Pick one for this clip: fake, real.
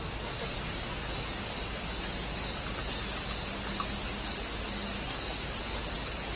real